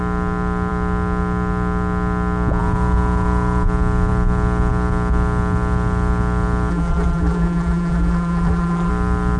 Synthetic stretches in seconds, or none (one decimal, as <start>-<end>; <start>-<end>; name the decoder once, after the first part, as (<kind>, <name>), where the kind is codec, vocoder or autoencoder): 6.7-8.9 (vocoder, BigVGAN v2)